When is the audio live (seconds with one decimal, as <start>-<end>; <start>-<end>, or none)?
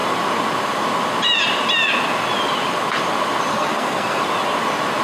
0.0-3.5; 4.2-5.0